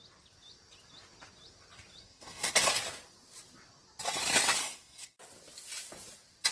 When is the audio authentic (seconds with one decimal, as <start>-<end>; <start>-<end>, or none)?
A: 0.0-2.0; 2.7-4.6; 5.2-6.5